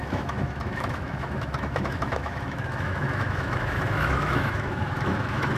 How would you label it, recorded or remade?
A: remade